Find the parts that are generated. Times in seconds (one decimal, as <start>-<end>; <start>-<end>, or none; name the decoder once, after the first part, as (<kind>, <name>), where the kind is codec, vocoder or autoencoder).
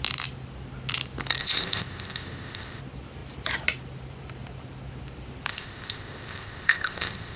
1.4-2.8 (codec, ZipCodec); 5.5-7.4